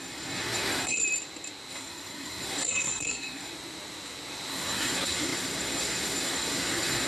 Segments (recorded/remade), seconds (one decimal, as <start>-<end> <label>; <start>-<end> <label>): 0.0-1.0 remade; 1.0-1.7 recorded; 1.7-3.5 remade; 3.5-4.5 recorded; 4.5-7.1 remade